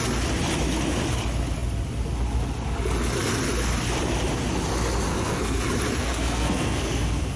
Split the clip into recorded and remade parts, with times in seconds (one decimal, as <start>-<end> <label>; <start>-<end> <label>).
0.0-5.1 recorded; 5.1-5.6 remade; 5.6-6.0 recorded; 6.0-7.4 remade